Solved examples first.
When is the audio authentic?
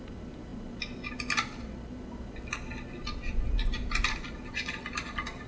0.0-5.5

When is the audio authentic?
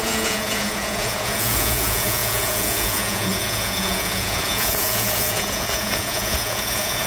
none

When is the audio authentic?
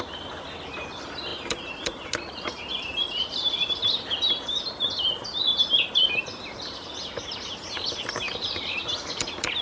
0.0-9.6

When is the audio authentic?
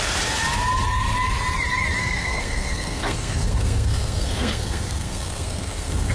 0.0-2.0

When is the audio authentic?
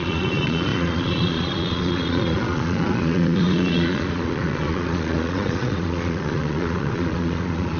none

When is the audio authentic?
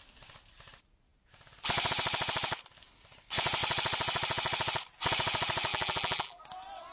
0.0-5.7; 6.4-6.9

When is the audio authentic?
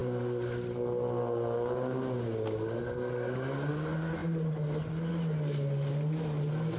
0.0-6.8